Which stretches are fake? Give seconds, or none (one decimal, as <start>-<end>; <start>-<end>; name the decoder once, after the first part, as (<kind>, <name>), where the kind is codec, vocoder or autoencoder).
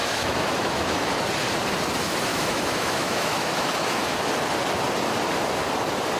0.0-1.2 (autoencoder, DAC-VAE); 2.3-4.2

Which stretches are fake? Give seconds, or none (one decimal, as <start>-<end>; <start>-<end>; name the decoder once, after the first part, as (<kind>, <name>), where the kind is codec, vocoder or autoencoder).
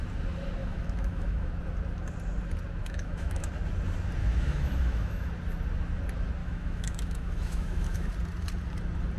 0.6-1.5 (autoencoder, DAC-VAE); 2.8-3.5; 4.2-5.3; 6.4-8.1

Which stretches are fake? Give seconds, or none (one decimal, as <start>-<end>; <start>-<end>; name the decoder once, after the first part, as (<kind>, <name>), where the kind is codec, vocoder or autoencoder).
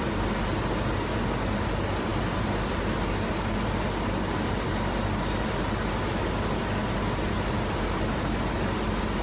none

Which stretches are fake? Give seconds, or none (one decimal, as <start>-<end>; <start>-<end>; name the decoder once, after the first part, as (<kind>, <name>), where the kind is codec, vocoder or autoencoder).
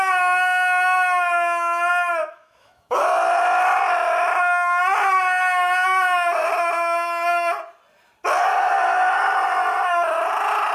2.2-3.0 (autoencoder, DAC-VAE)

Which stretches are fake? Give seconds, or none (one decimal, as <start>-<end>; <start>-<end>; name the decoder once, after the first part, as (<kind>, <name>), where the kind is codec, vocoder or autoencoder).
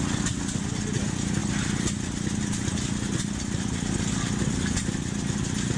none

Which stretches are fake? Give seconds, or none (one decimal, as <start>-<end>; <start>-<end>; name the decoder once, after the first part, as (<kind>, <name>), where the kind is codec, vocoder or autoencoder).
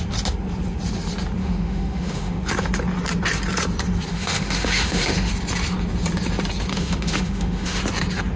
1.4-2.4 (autoencoder, DAC-VAE); 4.1-5.3; 6.7-7.8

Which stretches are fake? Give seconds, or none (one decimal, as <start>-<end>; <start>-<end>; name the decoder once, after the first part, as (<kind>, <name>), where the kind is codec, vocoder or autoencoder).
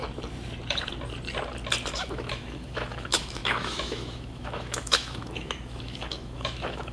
1.9-6.9 (autoencoder, DAC-VAE)